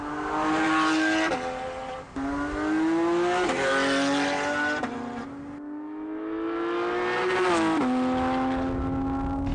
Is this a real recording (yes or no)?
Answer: yes